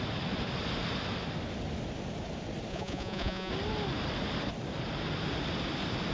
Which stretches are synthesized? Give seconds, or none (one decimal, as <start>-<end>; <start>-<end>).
2.7-3.5